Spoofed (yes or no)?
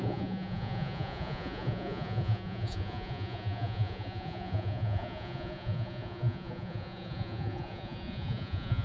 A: yes